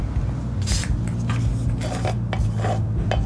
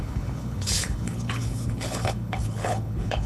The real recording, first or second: first